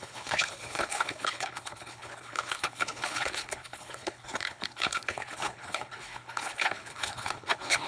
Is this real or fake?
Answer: fake